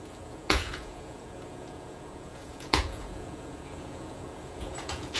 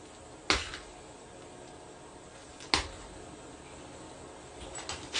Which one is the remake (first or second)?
first